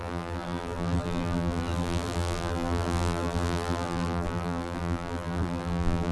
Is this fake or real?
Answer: fake